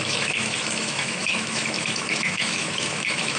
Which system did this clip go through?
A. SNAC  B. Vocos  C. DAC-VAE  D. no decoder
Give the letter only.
C